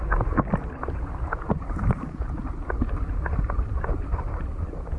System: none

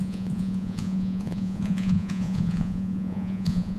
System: vocoder, Vocos